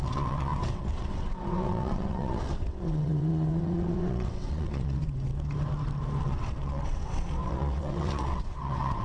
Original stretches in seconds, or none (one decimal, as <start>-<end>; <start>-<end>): 5.3-6.2